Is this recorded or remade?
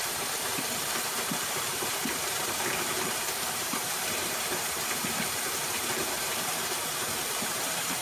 remade